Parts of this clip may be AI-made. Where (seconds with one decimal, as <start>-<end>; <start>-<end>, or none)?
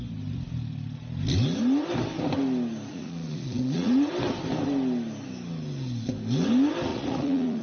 2.9-4.1; 6.9-7.6